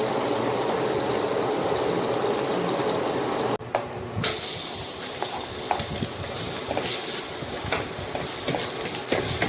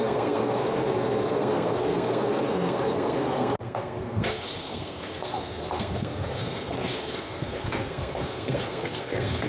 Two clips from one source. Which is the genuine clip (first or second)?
first